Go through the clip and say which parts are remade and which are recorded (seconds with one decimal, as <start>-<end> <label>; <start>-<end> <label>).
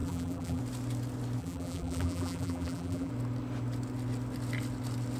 0.0-0.6 remade; 0.6-1.4 recorded; 1.4-3.1 remade; 3.1-5.2 recorded